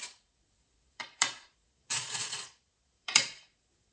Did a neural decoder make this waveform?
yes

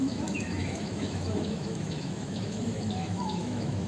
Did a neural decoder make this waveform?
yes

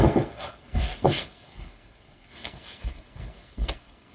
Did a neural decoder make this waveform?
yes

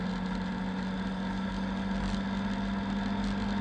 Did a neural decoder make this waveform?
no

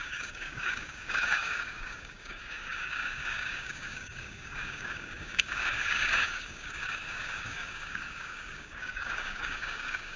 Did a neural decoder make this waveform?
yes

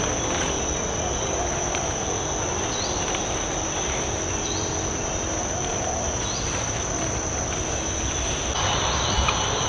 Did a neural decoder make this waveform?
no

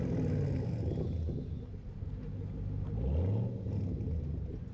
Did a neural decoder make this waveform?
no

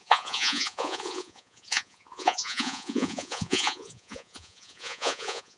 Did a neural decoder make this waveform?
yes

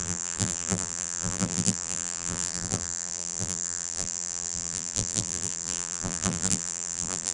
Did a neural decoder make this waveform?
yes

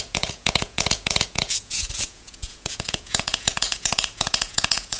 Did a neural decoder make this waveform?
yes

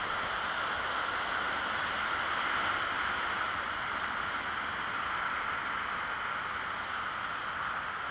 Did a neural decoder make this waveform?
no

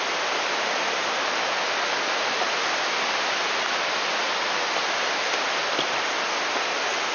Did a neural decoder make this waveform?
no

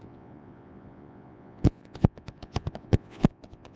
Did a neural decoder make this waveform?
yes